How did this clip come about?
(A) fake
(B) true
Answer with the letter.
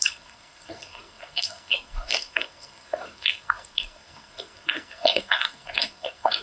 A